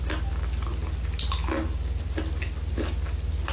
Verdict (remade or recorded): recorded